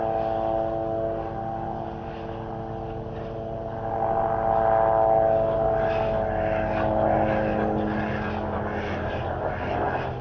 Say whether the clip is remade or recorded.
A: recorded